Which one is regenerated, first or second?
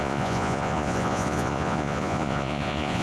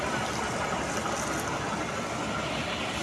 first